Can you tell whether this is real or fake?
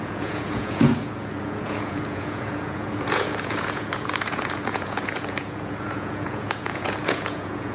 fake